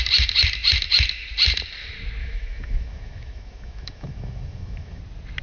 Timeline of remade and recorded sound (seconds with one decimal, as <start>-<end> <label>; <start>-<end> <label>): 0.0-2.2 recorded; 2.2-5.0 remade; 5.0-5.4 recorded